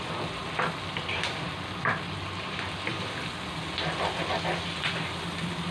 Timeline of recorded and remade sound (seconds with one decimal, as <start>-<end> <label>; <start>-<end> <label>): 0.0-5.7 recorded